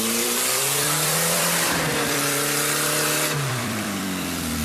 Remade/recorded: remade